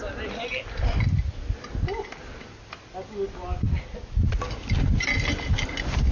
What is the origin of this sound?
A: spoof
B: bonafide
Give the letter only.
B